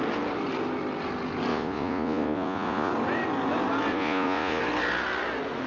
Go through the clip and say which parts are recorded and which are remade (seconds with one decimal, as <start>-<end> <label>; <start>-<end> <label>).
0.0-1.5 recorded; 1.5-2.9 remade; 2.9-3.9 recorded; 3.9-4.6 remade; 4.6-5.7 recorded